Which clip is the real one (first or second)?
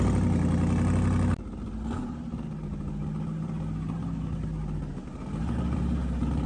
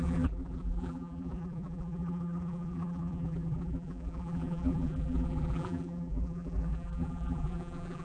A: first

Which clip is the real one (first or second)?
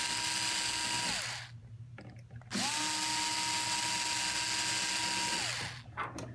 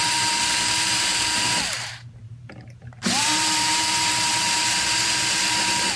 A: first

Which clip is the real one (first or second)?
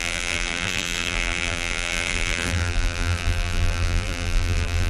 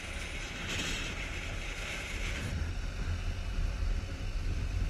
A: second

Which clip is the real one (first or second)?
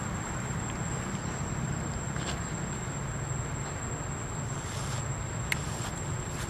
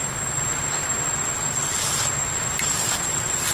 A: first